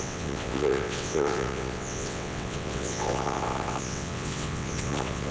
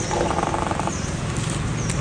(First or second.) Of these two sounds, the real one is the second